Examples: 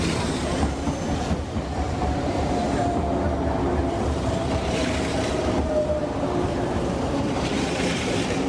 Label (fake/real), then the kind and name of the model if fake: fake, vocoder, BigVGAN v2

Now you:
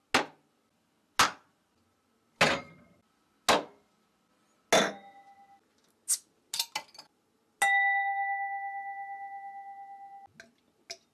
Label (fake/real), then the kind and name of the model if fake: real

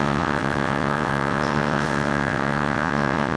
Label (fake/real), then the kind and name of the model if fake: fake, vocoder, WaveNeXt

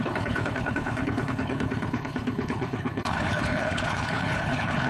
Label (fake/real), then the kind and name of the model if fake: fake, codec, HILCodec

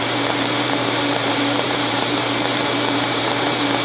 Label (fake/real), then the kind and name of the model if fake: fake, vocoder, BigVGAN v2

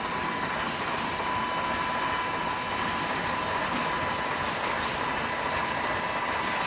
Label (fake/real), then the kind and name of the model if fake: real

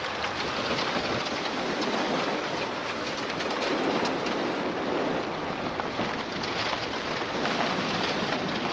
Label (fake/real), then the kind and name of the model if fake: real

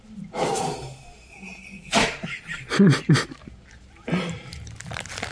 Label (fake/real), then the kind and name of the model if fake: real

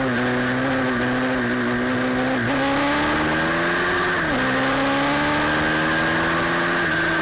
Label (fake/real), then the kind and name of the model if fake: real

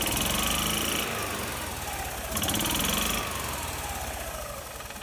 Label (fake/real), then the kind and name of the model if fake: real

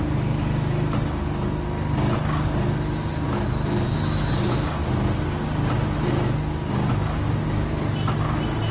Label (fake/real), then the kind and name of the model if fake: real